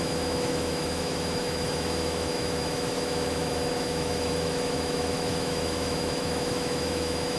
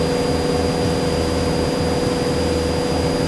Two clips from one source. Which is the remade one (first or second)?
first